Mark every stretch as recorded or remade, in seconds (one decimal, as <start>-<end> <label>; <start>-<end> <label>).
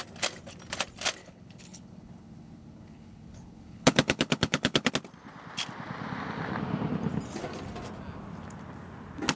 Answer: 0.0-1.2 recorded; 1.2-4.9 remade; 4.9-9.4 recorded